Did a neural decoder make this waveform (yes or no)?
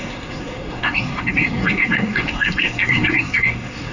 yes